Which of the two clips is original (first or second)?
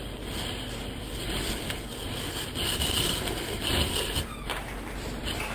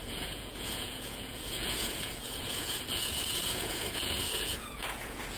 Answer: first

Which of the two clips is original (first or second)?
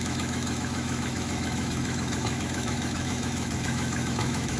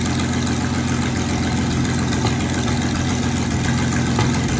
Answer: second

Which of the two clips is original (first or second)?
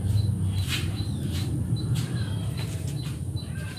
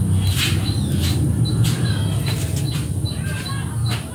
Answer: second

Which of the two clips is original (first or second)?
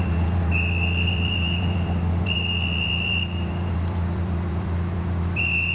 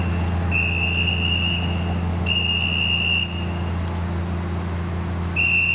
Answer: second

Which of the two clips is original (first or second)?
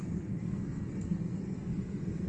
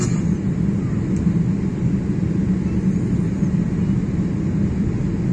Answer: second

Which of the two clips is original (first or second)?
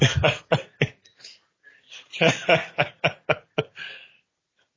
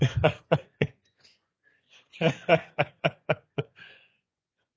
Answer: first